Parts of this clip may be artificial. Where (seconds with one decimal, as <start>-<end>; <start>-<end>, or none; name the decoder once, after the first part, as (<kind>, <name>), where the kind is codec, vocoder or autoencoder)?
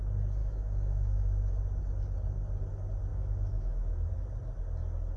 0.4-1.5 (autoencoder, DAC-VAE); 3.1-4.1